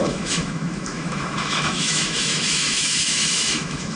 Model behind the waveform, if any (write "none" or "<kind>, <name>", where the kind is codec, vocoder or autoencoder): autoencoder, DAC-VAE